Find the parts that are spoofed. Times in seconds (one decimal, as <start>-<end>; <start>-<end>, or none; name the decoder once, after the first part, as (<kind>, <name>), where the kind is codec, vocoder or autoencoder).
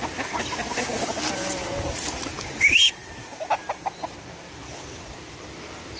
none